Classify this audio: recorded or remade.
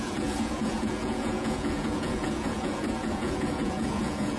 remade